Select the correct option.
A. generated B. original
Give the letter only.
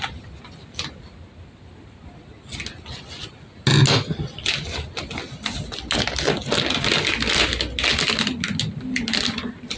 B